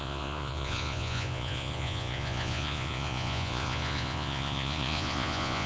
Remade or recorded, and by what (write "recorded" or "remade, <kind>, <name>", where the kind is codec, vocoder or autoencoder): remade, vocoder, Vocos